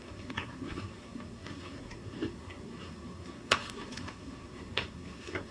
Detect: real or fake fake